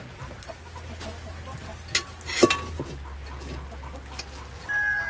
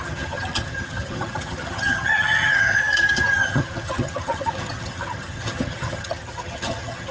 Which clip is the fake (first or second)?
second